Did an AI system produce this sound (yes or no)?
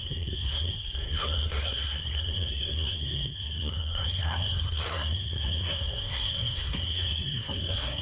yes